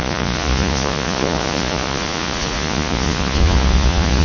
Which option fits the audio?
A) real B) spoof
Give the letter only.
B